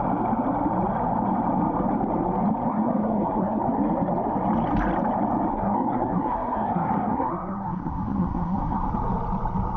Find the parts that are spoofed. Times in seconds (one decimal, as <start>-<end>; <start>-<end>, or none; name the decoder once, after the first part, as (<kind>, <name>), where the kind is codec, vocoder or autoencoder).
2.7-3.6 (codec, SNAC); 5.5-8.9